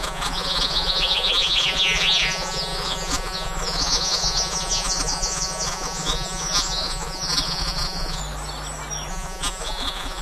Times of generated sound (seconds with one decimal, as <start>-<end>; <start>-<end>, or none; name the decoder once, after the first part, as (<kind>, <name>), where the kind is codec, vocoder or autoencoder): 0.0-8.2 (vocoder, Vocos); 9.1-10.2